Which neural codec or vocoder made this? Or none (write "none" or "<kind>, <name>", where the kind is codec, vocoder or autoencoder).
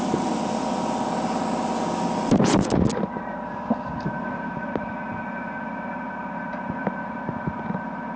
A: none